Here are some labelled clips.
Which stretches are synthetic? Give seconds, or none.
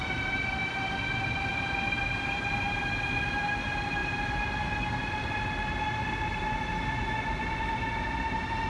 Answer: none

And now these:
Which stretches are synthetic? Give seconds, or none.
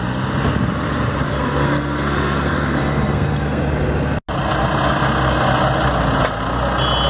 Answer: 1.3-3.6 (codec, SNAC)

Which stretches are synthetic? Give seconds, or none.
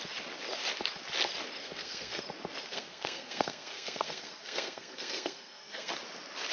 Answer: 1.6-2.2 (codec, SNAC); 2.6-5.9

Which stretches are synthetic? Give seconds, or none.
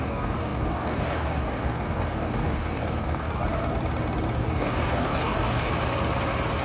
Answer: 0.0-3.4 (codec, DAC); 4.4-5.7